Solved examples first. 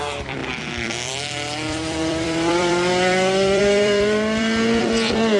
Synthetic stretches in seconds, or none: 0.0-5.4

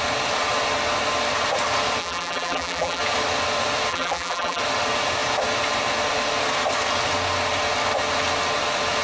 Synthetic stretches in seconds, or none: 2.0-3.0; 3.9-4.6